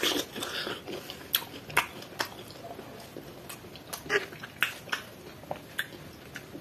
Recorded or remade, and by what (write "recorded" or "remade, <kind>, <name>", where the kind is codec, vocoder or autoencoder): recorded